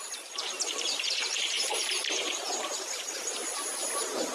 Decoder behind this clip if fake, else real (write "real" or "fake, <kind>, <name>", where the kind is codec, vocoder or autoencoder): fake, vocoder, BigVGAN v2